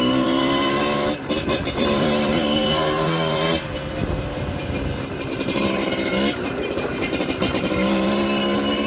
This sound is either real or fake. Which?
fake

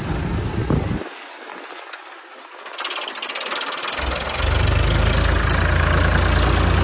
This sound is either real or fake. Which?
real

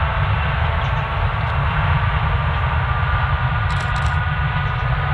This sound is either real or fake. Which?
real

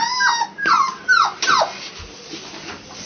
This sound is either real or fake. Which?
real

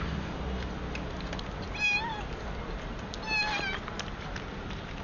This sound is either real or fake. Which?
real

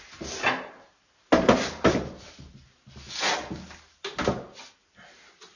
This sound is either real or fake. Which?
real